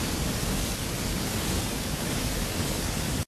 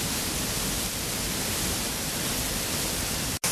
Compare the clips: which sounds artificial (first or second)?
first